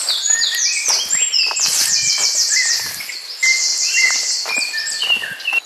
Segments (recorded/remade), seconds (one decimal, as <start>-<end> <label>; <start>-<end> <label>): 0.0-5.7 recorded